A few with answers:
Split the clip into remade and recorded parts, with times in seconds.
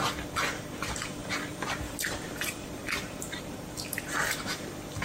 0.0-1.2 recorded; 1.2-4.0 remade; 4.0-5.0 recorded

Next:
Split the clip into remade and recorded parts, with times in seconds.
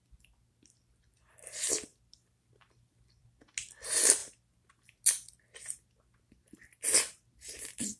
0.0-8.0 recorded